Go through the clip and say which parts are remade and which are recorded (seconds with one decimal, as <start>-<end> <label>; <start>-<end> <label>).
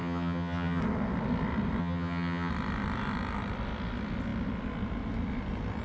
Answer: 0.0-0.8 remade; 0.8-1.8 recorded; 1.8-2.5 remade; 2.5-5.8 recorded